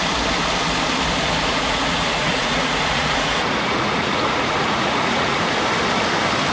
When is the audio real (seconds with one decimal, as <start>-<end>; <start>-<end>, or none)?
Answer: 0.0-1.5; 5.4-6.5